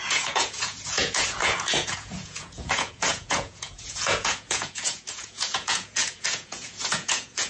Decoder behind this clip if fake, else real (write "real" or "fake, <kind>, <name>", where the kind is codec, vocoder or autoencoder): fake, vocoder, Vocos